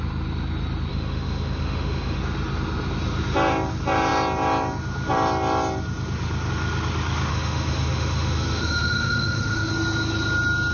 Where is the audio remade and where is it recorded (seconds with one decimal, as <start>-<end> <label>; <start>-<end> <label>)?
0.0-0.9 recorded; 0.9-2.2 remade; 2.2-7.3 recorded; 7.3-9.7 remade; 9.7-10.7 recorded